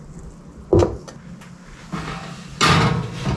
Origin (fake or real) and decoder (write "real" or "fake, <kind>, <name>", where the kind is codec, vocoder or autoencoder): real